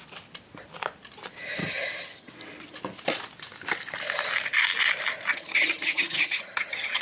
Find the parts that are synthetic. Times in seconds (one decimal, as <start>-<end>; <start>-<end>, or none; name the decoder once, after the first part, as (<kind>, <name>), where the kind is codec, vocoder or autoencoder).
1.6-2.3 (vocoder, HiFi-GAN); 5.3-7.0